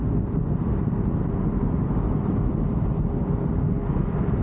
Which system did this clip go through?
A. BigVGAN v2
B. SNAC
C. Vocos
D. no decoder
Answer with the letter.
D